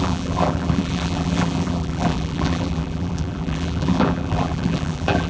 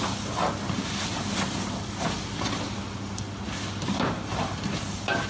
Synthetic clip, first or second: first